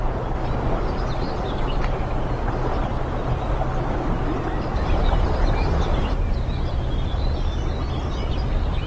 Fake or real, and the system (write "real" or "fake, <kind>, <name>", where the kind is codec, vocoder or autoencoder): real